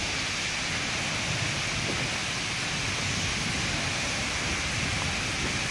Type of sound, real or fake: real